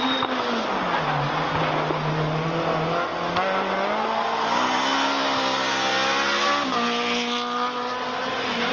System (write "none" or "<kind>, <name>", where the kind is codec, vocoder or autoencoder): none